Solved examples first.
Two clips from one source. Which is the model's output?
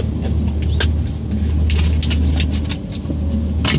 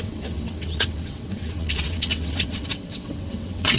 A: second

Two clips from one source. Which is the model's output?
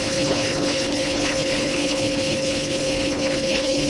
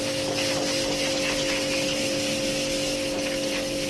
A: first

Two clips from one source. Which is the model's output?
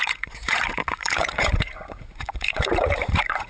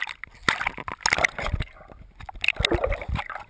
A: first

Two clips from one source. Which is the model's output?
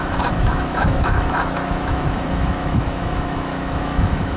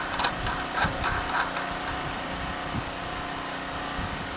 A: first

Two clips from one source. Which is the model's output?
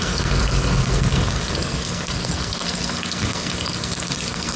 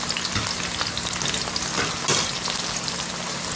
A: first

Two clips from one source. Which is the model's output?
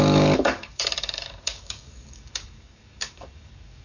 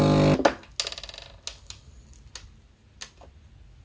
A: first